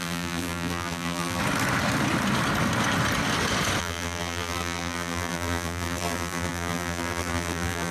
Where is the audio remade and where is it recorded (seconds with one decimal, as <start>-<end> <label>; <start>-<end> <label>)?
0.0-1.4 remade; 1.4-3.8 recorded; 3.8-7.9 remade